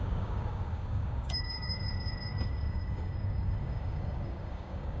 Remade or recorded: remade